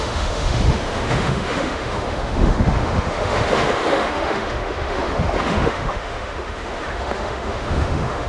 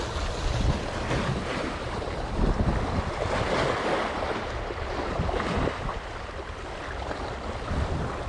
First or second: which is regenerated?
first